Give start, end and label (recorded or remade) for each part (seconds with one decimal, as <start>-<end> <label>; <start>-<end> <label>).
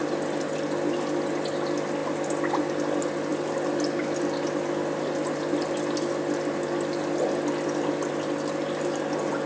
0.0-9.5 recorded